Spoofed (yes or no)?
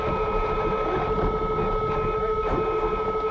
no